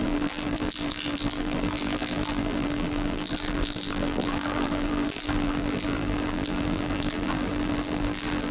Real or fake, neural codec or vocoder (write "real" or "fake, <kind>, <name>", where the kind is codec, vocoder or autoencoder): fake, vocoder, BigVGAN v2